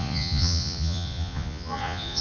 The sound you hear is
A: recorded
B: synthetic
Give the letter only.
B